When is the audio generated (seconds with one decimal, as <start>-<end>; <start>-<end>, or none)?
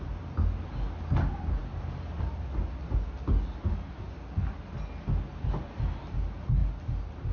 none